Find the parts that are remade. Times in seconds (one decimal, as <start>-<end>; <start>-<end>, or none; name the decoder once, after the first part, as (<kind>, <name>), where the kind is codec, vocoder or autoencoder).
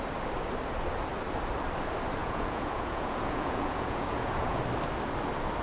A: 2.2-4.6 (vocoder, Vocos)